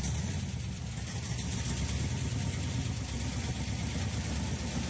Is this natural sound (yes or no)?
yes